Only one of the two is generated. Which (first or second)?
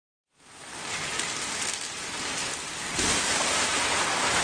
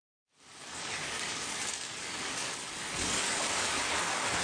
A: second